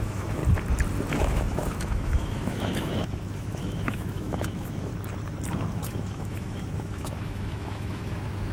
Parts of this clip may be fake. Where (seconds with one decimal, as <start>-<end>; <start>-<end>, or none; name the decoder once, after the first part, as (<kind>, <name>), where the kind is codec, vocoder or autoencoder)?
0.0-0.4 (autoencoder, DAC-VAE); 1.2-4.9; 5.5-8.5